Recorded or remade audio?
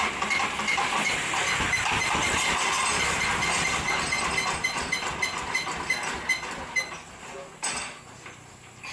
recorded